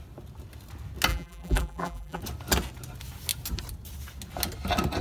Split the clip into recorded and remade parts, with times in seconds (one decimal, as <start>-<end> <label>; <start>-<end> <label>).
0.0-1.1 recorded; 1.1-2.2 remade; 2.2-5.0 recorded